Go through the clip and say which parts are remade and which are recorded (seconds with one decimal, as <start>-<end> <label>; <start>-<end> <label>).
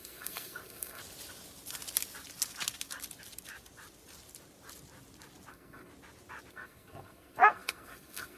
0.0-1.0 remade; 1.0-5.5 recorded; 5.5-5.9 remade; 5.9-6.5 recorded; 6.5-8.4 remade